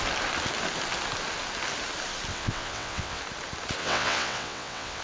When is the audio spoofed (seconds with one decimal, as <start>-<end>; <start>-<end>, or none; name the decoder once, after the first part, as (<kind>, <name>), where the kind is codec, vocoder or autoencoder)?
2.3-3.2 (vocoder, WaveNeXt); 3.8-5.0